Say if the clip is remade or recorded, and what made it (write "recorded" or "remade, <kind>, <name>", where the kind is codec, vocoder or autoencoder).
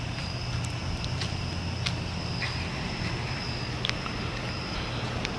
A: recorded